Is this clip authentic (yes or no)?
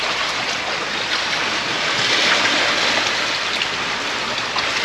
yes